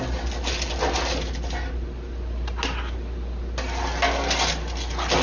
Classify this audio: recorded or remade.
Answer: recorded